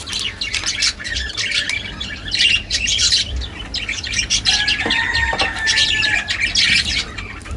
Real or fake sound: real